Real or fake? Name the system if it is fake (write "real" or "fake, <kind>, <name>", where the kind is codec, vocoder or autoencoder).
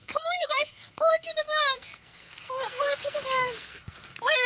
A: fake, codec, SNAC